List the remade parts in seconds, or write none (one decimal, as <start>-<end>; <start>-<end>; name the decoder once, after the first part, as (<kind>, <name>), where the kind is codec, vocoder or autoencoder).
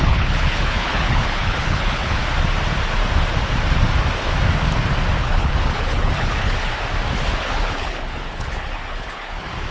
0.0-2.2 (codec, HILCodec); 5.2-6.7; 7.4-9.7